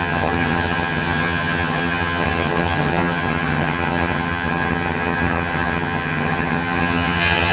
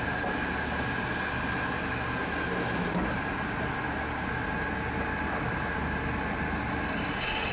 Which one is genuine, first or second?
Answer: second